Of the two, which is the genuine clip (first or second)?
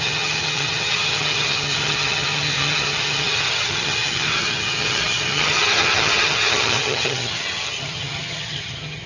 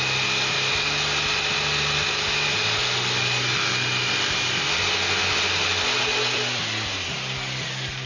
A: second